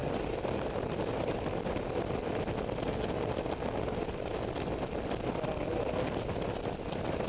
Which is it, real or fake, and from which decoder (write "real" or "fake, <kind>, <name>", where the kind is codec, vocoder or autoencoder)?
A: real